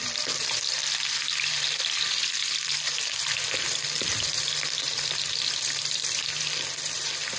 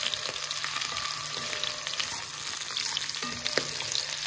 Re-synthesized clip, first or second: first